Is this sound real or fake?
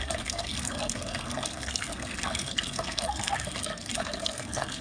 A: fake